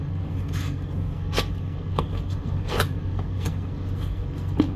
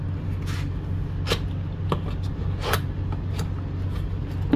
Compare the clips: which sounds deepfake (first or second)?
first